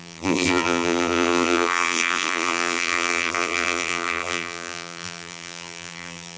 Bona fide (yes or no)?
no